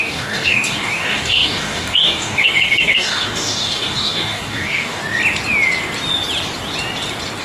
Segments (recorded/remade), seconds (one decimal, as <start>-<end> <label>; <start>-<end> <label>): 0.0-5.0 remade; 5.0-7.4 recorded